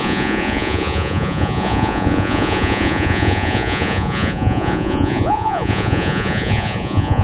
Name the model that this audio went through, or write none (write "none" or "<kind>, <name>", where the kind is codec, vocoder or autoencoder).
vocoder, Vocos